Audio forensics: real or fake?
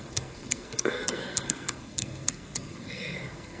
fake